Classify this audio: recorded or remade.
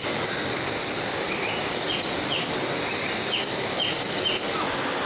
recorded